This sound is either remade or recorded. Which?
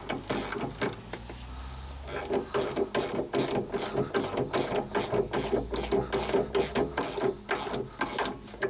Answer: recorded